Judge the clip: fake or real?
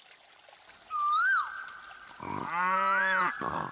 real